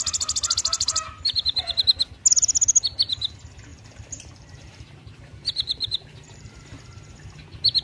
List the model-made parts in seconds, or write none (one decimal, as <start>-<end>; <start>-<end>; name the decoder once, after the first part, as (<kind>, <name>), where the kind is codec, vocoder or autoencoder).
0.7-1.4 (vocoder, BigVGAN v2); 3.7-6.5